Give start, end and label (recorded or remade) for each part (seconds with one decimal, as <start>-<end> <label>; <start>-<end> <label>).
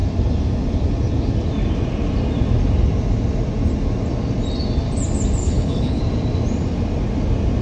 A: 0.0-5.4 recorded; 5.4-6.0 remade; 6.0-7.6 recorded